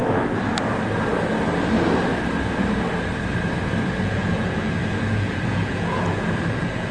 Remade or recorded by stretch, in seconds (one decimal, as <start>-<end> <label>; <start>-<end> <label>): 0.0-4.0 recorded; 4.0-6.9 remade